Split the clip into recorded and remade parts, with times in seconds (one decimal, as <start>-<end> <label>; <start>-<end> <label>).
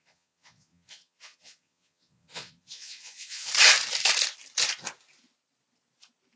0.0-3.5 remade; 3.5-6.4 recorded